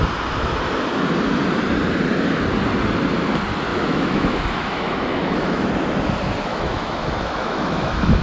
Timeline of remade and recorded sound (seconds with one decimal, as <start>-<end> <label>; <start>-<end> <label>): 0.0-3.7 recorded; 3.7-5.7 remade; 5.7-6.5 recorded; 6.5-8.2 remade